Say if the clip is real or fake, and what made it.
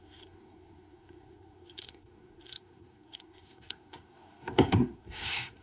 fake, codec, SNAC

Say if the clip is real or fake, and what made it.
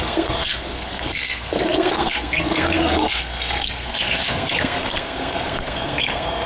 fake, codec, SNAC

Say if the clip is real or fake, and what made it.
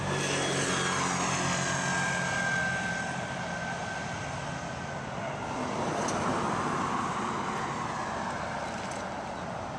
real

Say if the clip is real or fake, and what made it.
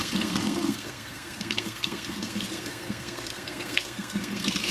fake, codec, SNAC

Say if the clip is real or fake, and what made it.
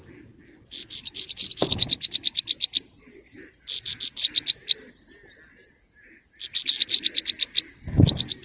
real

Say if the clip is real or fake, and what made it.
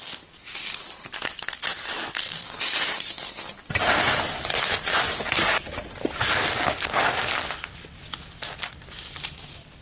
real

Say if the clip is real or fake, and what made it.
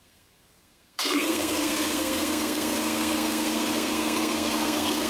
fake, codec, SNAC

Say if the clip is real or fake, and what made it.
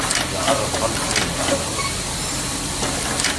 real